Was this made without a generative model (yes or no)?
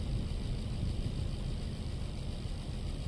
no